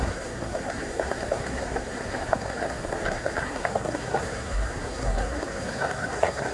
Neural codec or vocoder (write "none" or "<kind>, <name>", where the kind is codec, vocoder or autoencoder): codec, SNAC